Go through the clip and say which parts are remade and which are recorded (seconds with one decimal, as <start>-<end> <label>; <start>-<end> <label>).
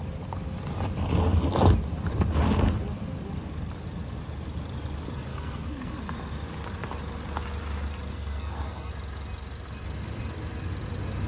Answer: 0.0-5.3 recorded; 5.3-6.0 remade; 6.0-8.1 recorded; 8.1-8.9 remade; 8.9-11.3 recorded